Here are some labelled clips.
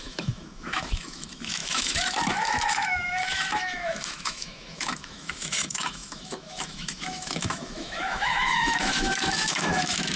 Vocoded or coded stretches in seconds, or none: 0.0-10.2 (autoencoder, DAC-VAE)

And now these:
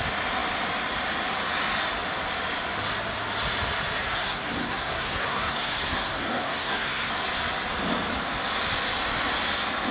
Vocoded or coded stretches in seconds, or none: 4.0-7.1 (codec, SNAC)